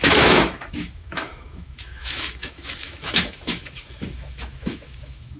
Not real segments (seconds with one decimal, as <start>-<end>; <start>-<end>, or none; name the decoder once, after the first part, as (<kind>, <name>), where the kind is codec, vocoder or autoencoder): 0.0-5.4 (autoencoder, DAC-VAE)